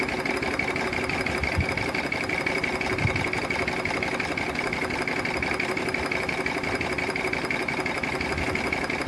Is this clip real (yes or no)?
yes